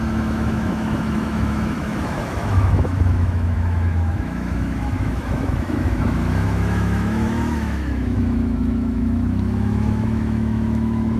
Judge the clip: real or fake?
fake